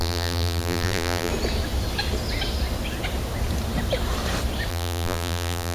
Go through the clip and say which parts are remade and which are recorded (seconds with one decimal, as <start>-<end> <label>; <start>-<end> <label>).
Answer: 0.0-1.3 remade; 1.3-4.7 recorded; 4.7-5.7 remade